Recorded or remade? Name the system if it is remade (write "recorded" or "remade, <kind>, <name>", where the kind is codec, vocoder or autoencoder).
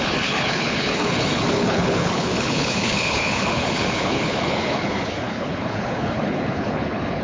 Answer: remade, codec, HILCodec